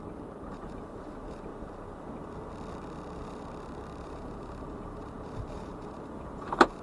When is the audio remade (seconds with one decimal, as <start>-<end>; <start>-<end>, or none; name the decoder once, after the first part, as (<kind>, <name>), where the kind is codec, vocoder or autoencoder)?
0.0-1.5 (vocoder, BigVGAN v2); 4.0-6.8